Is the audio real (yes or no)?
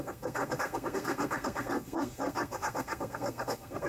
no